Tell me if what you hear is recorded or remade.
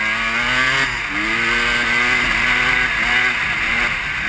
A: recorded